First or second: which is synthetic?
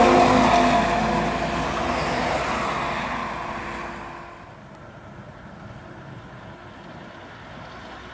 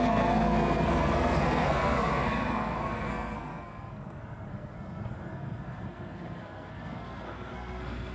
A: second